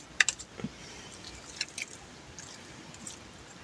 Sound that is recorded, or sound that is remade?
recorded